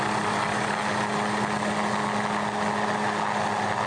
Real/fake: real